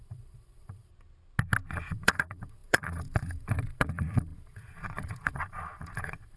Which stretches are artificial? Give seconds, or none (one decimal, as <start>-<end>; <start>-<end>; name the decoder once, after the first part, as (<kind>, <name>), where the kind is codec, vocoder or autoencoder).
0.0-0.9 (vocoder, Vocos); 1.7-6.4